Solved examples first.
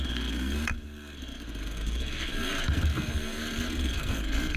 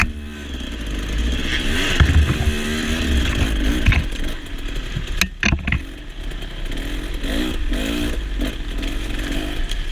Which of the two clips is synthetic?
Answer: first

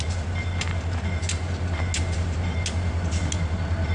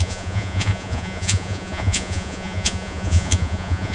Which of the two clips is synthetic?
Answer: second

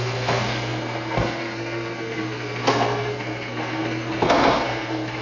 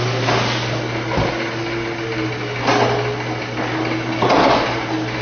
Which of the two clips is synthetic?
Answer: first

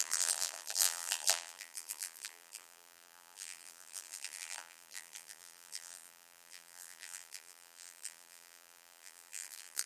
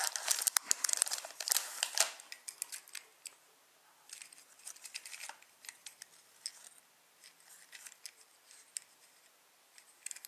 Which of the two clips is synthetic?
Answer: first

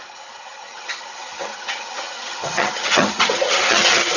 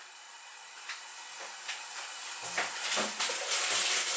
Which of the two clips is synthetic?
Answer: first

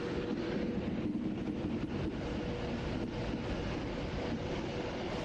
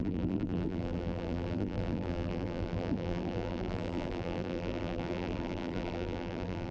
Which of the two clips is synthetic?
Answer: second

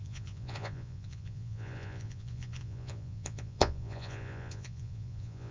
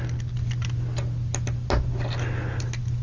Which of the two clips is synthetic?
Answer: first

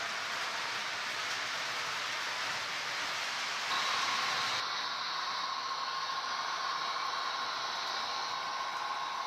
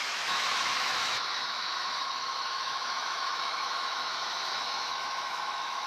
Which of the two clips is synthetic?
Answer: second